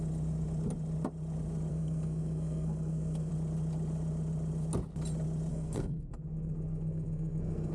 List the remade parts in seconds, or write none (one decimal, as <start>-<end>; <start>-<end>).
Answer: 1.7-3.3; 5.5-7.7